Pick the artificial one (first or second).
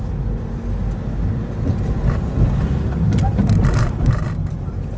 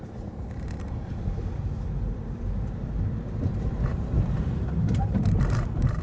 second